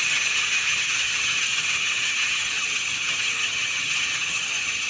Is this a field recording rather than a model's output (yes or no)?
no